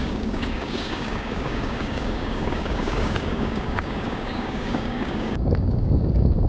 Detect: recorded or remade remade